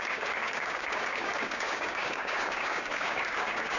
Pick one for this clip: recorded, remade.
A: remade